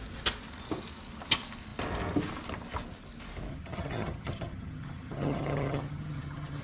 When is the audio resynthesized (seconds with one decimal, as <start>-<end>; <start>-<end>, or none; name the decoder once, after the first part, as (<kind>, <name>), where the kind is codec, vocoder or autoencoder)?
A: 3.5-6.6 (vocoder, HiFi-GAN)